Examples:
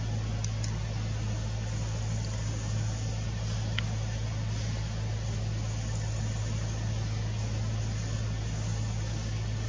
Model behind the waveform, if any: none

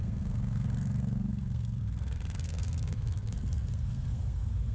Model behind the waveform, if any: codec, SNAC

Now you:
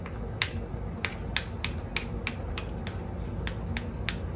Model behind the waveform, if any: none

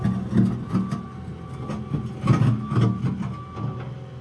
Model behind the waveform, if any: none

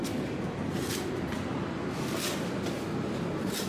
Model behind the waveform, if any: none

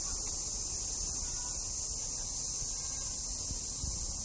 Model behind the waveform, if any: none